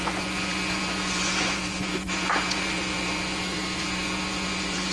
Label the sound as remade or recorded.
remade